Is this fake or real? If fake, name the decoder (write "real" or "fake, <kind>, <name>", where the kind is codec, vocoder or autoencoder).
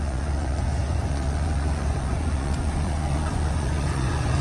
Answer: fake, vocoder, Vocos